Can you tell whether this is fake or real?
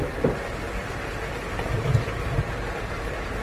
real